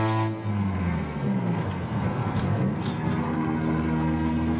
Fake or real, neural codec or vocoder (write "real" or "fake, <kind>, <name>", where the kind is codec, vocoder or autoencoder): fake, codec, SNAC